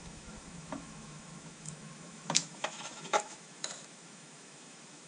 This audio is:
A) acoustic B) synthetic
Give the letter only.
B